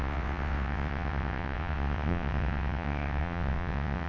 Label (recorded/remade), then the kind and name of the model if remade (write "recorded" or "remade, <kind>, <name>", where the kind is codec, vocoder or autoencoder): remade, vocoder, WaveNeXt